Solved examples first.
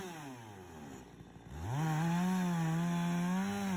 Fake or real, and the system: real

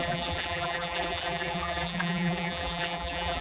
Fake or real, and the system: fake, vocoder, BigVGAN v2